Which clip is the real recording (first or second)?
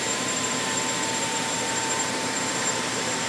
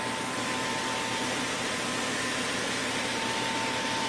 second